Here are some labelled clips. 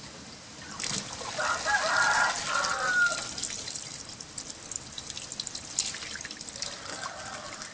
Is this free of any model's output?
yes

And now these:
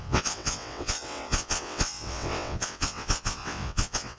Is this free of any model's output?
no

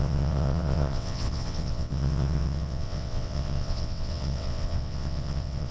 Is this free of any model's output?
no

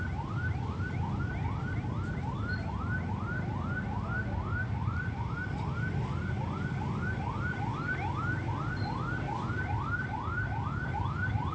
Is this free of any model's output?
yes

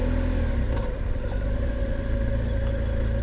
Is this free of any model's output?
yes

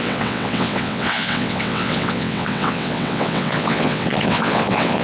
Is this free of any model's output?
no